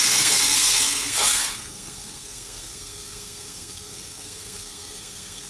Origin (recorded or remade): remade